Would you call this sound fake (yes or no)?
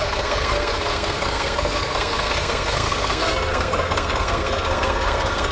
yes